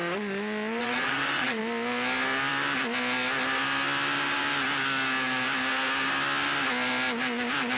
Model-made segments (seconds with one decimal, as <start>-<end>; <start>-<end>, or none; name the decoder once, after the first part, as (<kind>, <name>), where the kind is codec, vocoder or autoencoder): 0.8-1.6 (vocoder, WaveNeXt)